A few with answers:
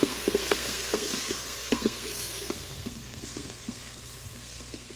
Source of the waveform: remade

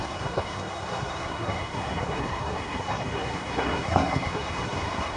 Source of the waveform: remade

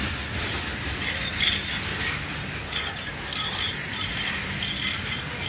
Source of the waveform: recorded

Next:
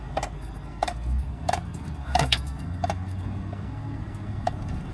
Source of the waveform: remade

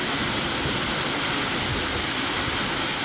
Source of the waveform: recorded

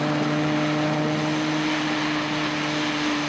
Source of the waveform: recorded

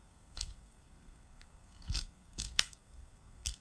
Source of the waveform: remade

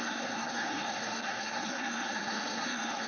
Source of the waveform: remade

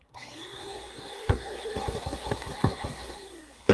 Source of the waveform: remade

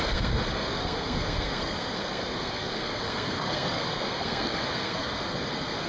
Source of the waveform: remade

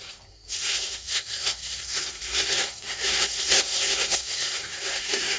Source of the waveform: remade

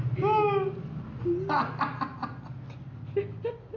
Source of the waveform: recorded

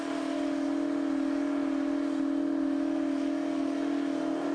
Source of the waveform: recorded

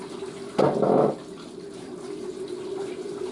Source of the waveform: recorded